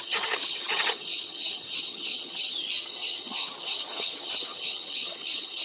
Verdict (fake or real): fake